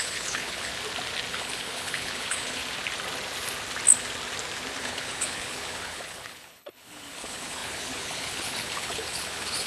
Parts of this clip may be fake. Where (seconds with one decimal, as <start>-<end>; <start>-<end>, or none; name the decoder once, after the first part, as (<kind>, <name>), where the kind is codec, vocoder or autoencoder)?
0.0-0.7 (codec, HILCodec); 1.3-2.6; 4.8-9.7